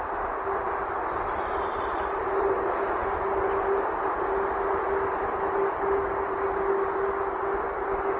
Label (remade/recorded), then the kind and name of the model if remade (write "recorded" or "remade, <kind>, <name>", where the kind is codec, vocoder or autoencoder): recorded